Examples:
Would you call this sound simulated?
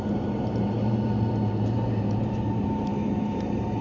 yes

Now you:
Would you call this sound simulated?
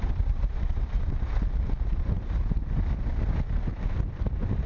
yes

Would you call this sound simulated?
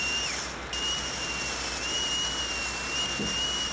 no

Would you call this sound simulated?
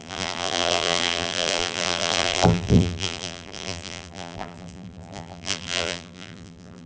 yes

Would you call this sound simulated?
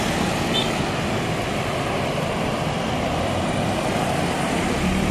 no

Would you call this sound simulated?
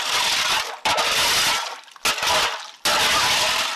no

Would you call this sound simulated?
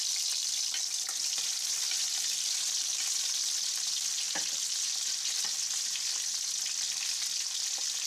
no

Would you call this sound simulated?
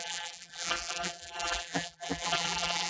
yes